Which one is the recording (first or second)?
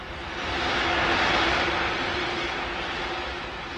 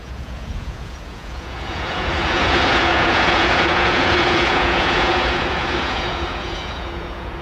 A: first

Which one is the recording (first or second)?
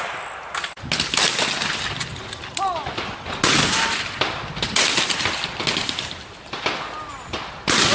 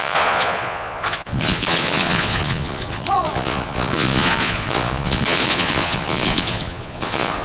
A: first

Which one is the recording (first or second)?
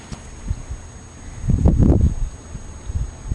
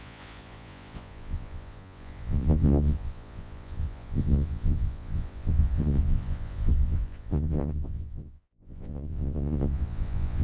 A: first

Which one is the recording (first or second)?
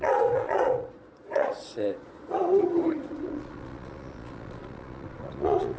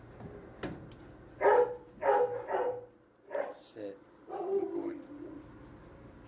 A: second